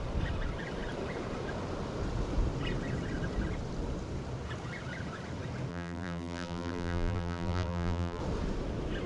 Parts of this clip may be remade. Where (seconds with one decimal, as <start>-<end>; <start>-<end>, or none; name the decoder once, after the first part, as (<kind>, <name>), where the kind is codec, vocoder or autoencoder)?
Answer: 5.7-8.2 (vocoder, BigVGAN v2)